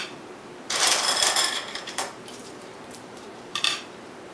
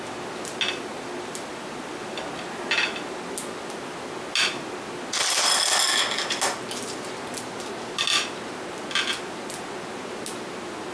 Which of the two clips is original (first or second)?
second